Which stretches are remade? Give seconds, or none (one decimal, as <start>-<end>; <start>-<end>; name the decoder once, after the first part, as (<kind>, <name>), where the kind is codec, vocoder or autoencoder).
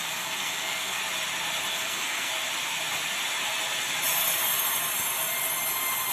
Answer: 0.0-1.0 (codec, SNAC); 1.7-2.3